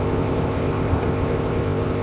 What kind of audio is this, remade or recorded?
remade